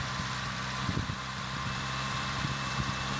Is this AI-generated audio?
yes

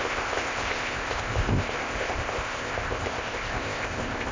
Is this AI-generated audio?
yes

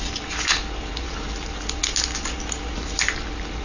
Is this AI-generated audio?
no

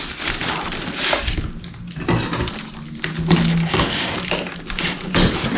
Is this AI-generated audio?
no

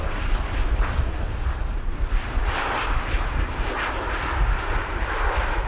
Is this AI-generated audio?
no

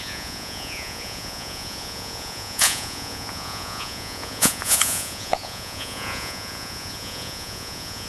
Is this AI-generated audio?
yes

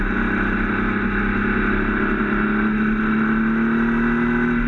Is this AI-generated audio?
no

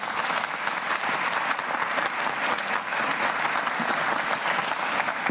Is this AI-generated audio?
no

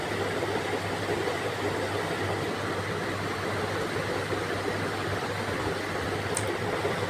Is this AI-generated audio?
no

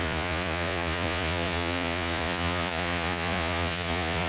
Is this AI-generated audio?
yes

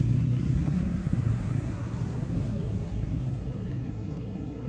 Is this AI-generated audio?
yes